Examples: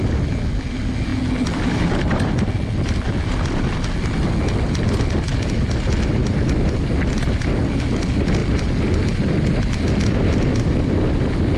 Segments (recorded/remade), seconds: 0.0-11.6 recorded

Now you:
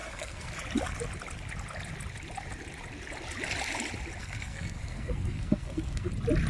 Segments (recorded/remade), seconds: 0.0-0.5 remade; 0.5-4.2 recorded; 4.2-6.1 remade; 6.1-6.5 recorded

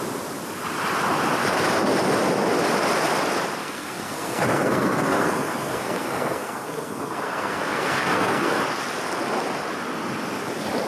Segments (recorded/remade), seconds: 0.0-3.6 recorded; 3.6-8.6 remade; 8.6-10.9 recorded

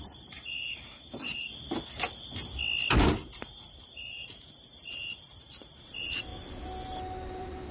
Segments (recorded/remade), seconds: 0.0-1.5 remade; 1.5-2.9 recorded; 2.9-6.3 remade; 6.3-7.3 recorded; 7.3-7.7 remade

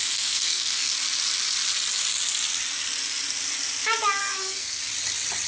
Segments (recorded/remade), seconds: 0.0-0.9 remade; 0.9-4.2 recorded; 4.2-4.8 remade; 4.8-5.5 recorded

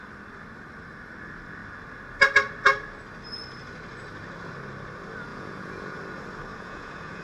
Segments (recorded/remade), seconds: 0.0-5.3 recorded; 5.3-6.0 remade; 6.0-6.5 recorded; 6.5-7.2 remade